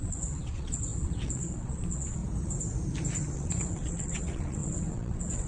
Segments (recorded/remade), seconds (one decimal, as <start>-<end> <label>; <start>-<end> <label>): 0.0-2.2 remade; 2.2-3.3 recorded; 3.3-5.5 remade